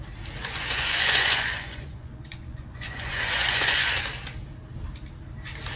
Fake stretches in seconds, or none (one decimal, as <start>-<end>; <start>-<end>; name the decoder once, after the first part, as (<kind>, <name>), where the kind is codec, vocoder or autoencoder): 0.4-3.9 (vocoder, Vocos)